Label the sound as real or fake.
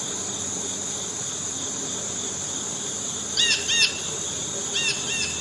real